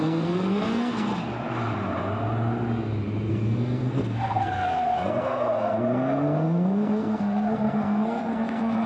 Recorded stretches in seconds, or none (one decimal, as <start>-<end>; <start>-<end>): 1.1-3.3